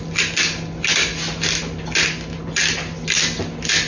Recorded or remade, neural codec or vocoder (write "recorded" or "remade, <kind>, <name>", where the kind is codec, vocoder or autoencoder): recorded